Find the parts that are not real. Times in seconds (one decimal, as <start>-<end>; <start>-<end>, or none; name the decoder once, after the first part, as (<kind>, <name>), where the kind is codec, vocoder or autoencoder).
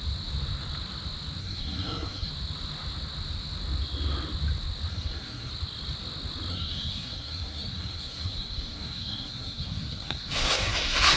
1.4-2.3 (codec, SNAC); 4.9-5.5; 6.5-11.2